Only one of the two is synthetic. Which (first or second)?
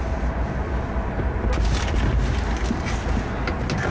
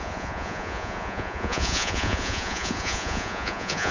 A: second